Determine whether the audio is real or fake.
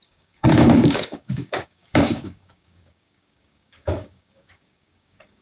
fake